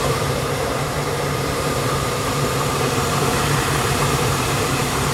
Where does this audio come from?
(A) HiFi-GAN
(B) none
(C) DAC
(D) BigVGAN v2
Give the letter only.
D